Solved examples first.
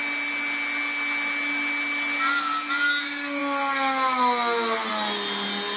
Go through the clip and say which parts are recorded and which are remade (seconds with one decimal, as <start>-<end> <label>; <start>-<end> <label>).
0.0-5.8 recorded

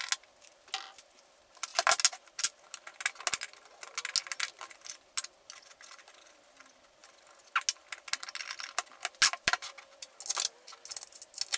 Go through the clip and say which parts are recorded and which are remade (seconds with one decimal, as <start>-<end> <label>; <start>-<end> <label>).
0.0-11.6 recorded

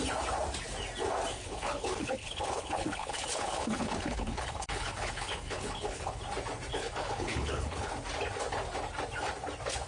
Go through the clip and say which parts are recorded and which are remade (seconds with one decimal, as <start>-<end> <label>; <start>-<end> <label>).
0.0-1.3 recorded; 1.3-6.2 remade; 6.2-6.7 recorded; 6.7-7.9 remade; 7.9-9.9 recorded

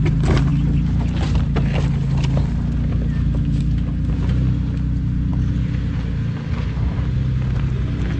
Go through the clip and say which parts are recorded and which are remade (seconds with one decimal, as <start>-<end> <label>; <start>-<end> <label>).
0.0-8.2 recorded

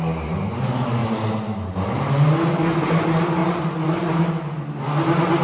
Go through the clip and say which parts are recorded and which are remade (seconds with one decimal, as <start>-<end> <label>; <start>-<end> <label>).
0.0-1.0 recorded; 1.0-2.1 remade; 2.1-3.4 recorded; 3.4-4.3 remade; 4.3-5.4 recorded